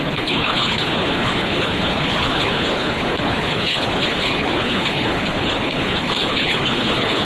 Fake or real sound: fake